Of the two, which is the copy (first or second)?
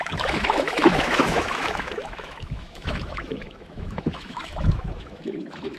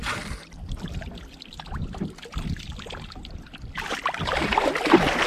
first